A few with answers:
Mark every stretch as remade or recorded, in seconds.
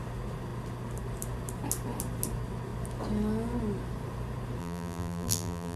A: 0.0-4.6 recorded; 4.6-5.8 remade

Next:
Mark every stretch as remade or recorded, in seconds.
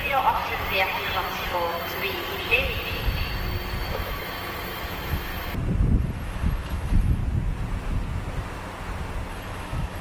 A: 0.0-0.4 remade; 0.4-3.9 recorded; 3.9-5.3 remade; 5.3-6.0 recorded; 6.0-7.2 remade; 7.2-9.3 recorded; 9.3-10.0 remade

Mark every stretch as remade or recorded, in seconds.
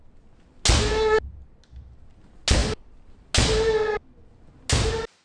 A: 0.0-5.2 recorded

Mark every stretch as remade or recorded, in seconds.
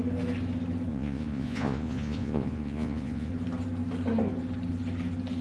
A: 0.0-0.9 recorded; 0.9-3.3 remade; 3.3-5.4 recorded